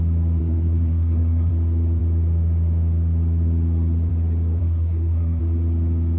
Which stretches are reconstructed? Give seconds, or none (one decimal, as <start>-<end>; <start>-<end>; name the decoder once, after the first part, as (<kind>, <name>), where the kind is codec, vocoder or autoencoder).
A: 0.4-1.5 (codec, SNAC); 4.6-5.4